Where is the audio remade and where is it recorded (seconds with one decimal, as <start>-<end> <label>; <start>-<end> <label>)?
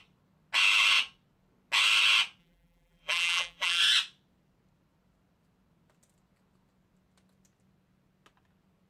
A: 0.0-2.4 recorded; 2.4-3.8 remade; 3.8-8.9 recorded